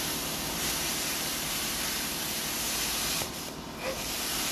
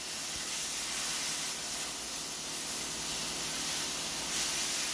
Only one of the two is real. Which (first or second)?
second